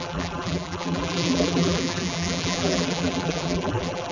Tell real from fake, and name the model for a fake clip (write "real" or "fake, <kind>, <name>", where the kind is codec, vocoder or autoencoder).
fake, vocoder, BigVGAN v2